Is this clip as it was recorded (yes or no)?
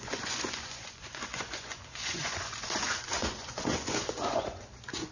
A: no